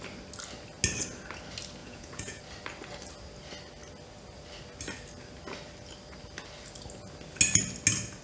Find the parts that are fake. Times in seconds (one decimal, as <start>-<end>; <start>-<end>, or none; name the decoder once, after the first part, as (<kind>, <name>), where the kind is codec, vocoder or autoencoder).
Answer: 1.8-2.4 (vocoder, Vocos)